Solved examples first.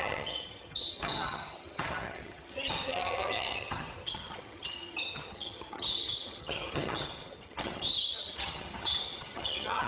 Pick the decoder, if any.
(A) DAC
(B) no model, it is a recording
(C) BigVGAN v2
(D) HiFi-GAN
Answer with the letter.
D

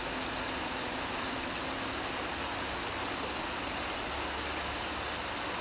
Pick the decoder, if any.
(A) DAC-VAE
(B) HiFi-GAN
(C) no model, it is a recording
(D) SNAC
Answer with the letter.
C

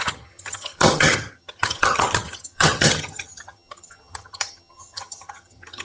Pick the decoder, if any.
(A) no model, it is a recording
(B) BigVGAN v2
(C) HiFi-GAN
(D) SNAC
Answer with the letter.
C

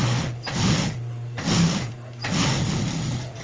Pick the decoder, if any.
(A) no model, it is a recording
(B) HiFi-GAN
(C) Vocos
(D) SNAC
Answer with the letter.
A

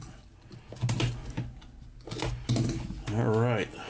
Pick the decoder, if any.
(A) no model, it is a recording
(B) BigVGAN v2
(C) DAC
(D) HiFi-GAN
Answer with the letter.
A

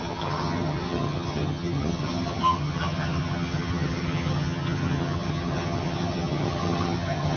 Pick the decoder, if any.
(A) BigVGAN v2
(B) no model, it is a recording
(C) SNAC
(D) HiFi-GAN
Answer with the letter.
D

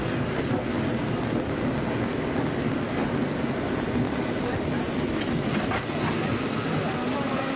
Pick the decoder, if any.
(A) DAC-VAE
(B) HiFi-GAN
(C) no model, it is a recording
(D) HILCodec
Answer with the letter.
C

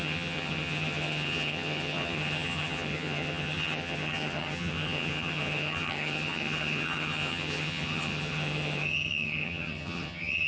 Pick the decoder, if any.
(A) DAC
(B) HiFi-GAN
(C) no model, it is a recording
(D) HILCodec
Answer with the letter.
B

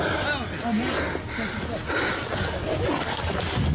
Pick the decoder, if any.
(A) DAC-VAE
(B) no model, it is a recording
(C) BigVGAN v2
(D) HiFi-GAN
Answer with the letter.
B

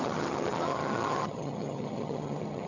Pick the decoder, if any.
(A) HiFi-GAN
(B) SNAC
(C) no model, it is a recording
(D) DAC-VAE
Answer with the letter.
A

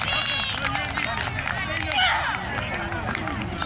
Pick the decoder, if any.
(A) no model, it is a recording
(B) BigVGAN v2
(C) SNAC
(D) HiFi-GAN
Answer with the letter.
A